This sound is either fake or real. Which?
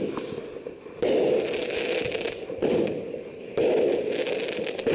real